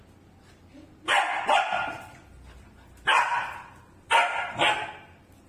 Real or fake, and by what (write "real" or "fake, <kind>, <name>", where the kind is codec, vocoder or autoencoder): real